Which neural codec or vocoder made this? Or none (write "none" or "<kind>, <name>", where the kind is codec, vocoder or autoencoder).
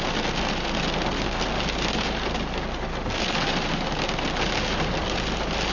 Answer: none